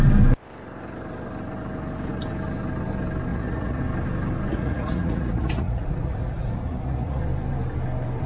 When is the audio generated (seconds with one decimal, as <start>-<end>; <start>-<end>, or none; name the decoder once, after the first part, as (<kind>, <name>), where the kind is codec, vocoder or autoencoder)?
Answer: 3.3-3.8 (vocoder, Vocos); 4.5-7.2